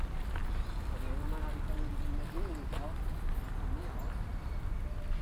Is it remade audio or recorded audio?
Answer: recorded